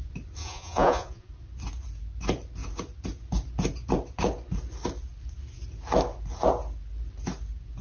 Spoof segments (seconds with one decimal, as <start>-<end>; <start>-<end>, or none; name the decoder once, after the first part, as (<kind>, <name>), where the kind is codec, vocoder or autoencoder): 0.4-1.3 (vocoder, Vocos)

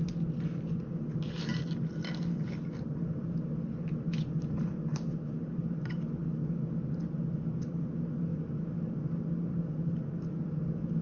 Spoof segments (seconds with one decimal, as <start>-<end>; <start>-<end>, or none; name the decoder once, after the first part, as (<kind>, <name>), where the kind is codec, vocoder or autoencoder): none

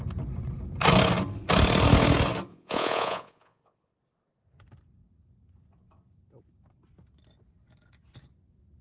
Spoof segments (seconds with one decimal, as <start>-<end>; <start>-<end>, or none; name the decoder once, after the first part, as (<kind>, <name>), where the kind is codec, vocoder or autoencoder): 2.5-4.0 (vocoder, Vocos)

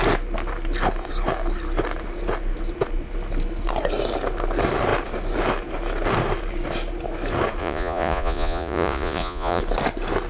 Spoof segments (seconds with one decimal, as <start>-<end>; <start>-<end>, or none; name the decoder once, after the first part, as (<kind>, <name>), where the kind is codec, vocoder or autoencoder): 7.6-9.6 (vocoder, Vocos)

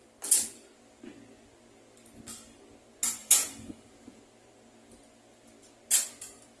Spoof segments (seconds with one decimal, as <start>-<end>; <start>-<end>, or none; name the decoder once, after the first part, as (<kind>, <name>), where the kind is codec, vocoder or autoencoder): 3.2-4.2 (vocoder, Vocos)

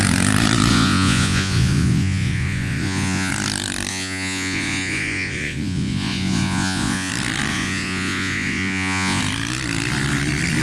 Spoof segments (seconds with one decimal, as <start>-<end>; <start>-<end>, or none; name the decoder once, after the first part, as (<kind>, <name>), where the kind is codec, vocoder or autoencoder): 0.7-3.3 (vocoder, Vocos); 3.9-7.1; 7.5-9.2

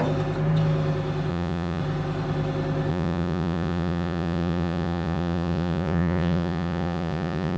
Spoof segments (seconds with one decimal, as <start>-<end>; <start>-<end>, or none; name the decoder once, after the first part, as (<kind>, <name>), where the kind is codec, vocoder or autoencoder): 1.3-1.8 (vocoder, Vocos); 2.9-7.6